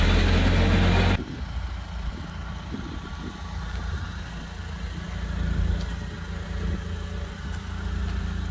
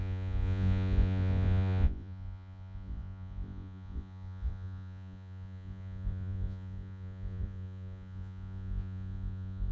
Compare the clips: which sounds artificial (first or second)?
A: second